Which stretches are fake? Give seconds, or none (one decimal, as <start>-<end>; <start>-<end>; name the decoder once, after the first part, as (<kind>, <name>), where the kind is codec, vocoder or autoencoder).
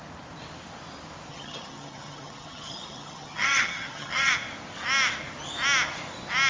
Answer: 1.3-4.3 (vocoder, HiFi-GAN)